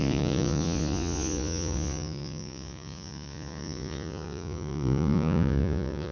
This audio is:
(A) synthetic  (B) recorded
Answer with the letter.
A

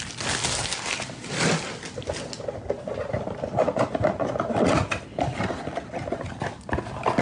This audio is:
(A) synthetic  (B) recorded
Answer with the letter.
B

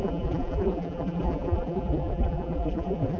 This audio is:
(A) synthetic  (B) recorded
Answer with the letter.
A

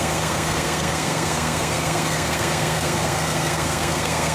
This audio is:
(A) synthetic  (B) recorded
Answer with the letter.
A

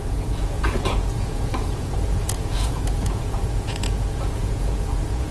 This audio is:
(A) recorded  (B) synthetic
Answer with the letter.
B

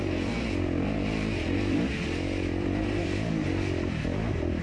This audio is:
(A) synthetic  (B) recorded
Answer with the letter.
B